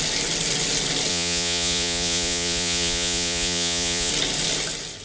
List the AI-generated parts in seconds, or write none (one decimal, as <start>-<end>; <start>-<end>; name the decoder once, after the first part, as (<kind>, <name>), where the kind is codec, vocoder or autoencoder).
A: 1.1-4.1 (vocoder, Vocos)